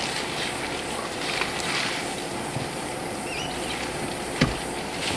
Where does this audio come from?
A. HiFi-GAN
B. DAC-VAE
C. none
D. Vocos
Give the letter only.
C